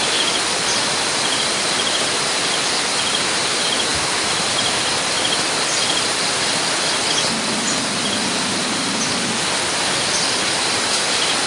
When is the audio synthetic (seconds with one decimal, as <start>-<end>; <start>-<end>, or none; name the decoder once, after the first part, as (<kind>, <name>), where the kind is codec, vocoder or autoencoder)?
none